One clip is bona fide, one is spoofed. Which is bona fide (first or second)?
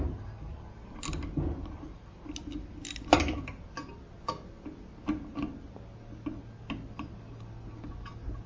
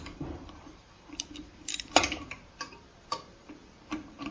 first